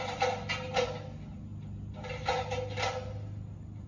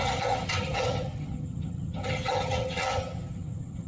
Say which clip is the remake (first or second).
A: second